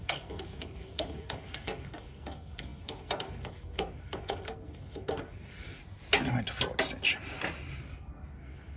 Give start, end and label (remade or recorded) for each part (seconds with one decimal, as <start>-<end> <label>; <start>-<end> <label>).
0.0-5.8 remade; 5.8-7.8 recorded; 7.8-8.8 remade